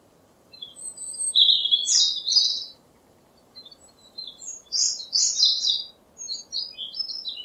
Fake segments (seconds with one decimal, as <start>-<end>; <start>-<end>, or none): 0.0-5.0; 6.8-7.4